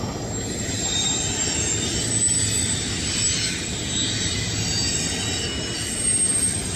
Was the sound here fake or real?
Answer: real